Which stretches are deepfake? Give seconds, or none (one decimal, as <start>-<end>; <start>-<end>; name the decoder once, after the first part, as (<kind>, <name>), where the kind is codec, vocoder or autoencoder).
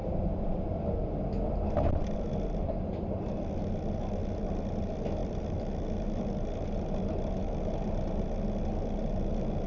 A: 0.0-0.6 (vocoder, BigVGAN v2); 5.2-6.2